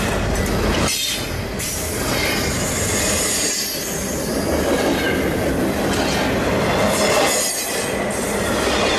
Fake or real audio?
real